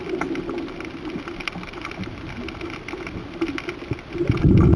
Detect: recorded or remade recorded